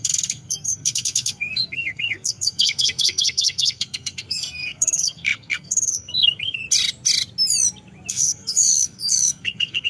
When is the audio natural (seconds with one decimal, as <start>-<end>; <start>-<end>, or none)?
6.6-8.1